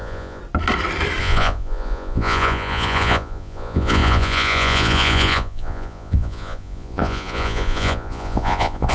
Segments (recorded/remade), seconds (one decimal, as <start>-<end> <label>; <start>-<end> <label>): 0.0-0.4 remade; 0.4-1.2 recorded; 1.2-8.9 remade